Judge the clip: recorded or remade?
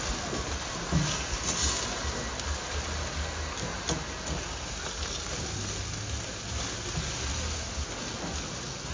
recorded